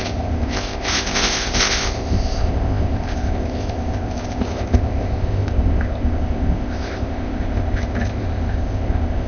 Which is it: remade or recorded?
remade